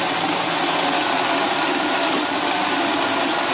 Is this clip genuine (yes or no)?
yes